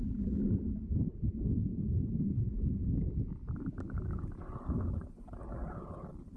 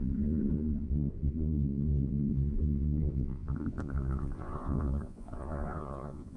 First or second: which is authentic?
first